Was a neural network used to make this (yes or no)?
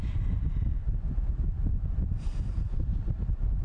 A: yes